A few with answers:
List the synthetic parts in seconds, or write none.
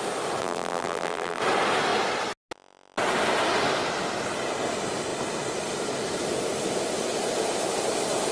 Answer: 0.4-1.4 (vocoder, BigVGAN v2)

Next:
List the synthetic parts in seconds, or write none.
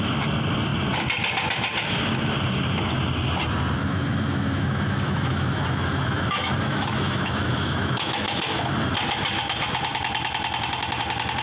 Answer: 3.8-8.7 (autoencoder, DAC-VAE)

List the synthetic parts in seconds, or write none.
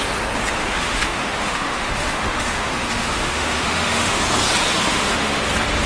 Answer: 0.7-4.2 (autoencoder, DAC-VAE); 4.8-5.4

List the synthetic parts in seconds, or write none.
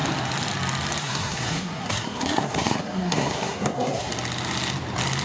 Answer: 1.0-4.1 (codec, SNAC)